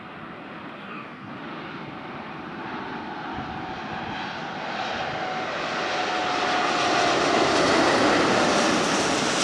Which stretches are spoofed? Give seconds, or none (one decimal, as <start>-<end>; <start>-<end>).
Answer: 0.8-1.3